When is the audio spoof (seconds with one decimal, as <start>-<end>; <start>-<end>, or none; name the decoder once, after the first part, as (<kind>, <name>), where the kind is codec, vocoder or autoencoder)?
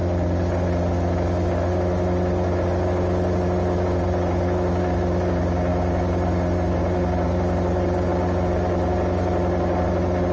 none